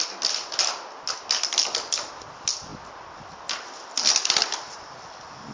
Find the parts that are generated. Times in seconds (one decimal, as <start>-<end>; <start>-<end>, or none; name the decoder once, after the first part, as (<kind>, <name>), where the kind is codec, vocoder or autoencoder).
none